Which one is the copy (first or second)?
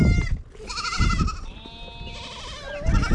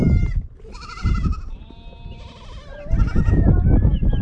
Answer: second